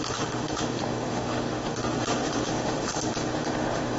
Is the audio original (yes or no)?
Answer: no